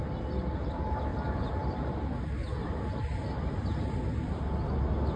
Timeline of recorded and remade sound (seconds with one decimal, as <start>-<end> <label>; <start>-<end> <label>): 0.0-5.2 recorded